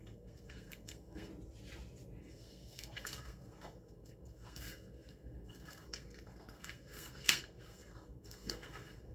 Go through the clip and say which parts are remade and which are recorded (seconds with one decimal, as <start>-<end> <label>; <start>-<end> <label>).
0.0-1.3 remade; 1.3-2.2 recorded; 2.2-9.1 remade